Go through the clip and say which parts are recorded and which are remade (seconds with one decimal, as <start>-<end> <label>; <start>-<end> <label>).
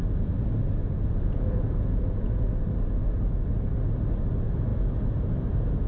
0.0-0.8 recorded; 0.8-2.5 remade; 2.5-5.9 recorded